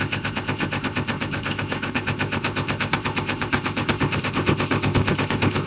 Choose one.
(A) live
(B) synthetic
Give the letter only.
B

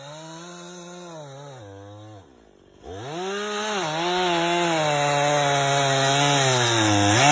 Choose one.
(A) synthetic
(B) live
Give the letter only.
B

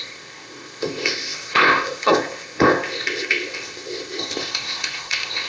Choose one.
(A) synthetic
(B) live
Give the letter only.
A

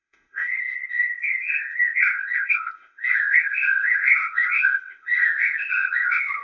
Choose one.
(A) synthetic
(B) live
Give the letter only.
A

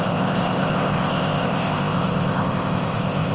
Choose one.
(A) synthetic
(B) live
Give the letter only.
A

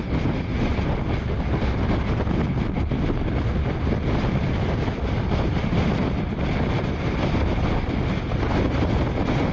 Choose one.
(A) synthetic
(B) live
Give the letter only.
B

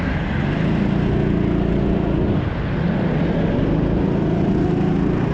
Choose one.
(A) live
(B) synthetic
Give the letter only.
A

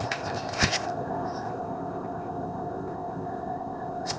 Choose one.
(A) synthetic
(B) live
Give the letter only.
A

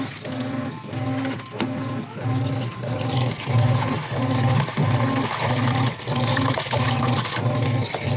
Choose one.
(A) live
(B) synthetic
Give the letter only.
A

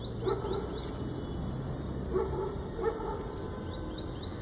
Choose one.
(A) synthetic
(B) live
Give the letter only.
B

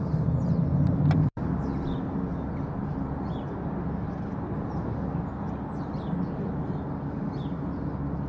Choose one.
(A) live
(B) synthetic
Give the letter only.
A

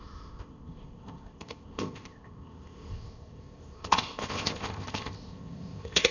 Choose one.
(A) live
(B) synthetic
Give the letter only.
B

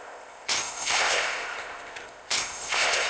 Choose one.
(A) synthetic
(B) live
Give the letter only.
A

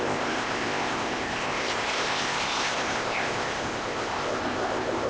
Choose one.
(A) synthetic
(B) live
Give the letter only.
A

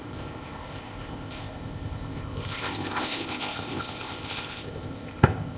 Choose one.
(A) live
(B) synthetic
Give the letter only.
B